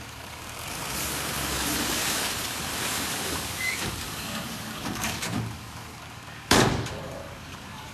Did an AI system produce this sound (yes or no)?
yes